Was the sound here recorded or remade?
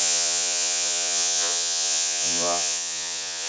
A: remade